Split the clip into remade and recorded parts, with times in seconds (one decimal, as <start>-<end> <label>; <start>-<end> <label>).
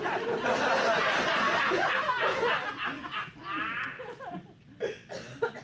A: 0.0-3.4 recorded; 3.4-4.0 remade; 4.0-5.6 recorded